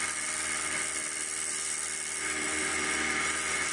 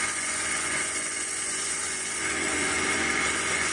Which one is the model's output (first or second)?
second